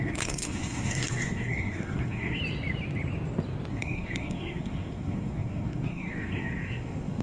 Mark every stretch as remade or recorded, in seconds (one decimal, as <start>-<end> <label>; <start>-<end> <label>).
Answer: 0.0-2.4 remade; 2.4-3.7 recorded; 3.7-7.2 remade